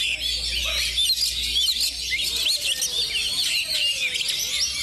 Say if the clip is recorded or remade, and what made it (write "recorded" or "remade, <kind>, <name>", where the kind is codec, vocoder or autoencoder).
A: recorded